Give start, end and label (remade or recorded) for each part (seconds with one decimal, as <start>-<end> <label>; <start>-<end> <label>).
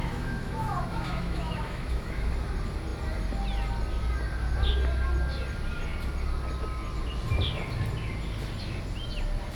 0.0-2.3 remade; 2.3-9.5 recorded